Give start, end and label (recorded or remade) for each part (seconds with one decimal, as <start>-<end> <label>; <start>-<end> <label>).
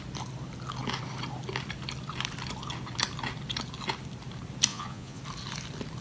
0.0-4.7 recorded; 4.7-5.2 remade; 5.2-6.0 recorded